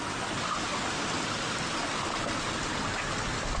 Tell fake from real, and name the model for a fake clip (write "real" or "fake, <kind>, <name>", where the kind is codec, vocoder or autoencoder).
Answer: real